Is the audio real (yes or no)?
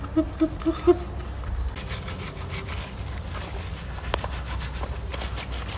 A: yes